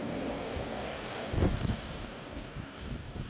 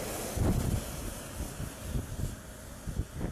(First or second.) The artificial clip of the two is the first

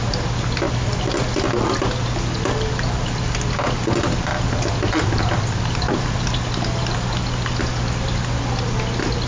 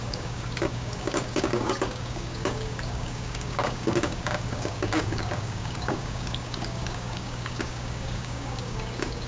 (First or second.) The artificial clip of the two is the second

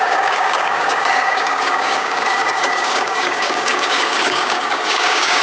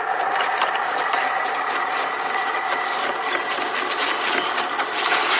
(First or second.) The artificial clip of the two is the first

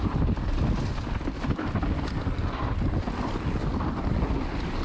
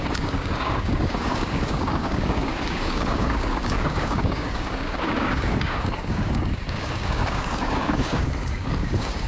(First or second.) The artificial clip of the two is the second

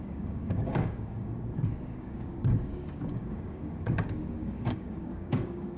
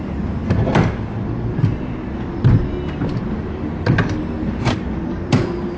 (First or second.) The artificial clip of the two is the first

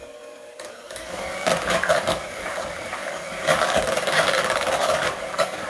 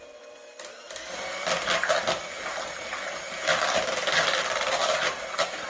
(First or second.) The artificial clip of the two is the first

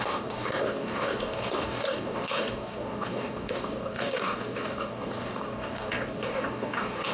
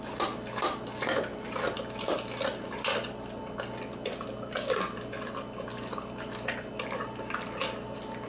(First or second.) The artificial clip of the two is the first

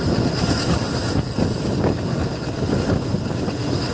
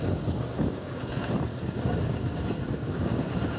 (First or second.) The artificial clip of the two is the second